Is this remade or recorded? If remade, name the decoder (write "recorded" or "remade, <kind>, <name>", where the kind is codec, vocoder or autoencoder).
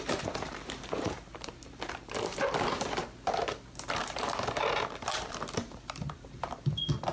remade, vocoder, BigVGAN v2